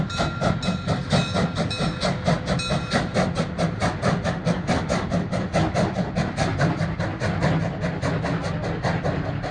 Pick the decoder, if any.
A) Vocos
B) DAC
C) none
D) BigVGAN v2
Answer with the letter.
C